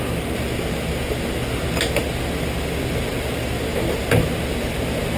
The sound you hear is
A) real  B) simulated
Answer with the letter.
A